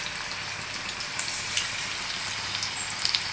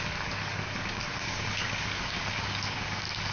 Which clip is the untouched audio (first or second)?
first